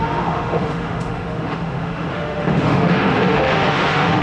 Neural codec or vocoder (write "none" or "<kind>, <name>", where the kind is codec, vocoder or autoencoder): autoencoder, DAC-VAE